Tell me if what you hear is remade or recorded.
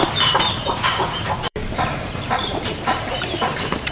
remade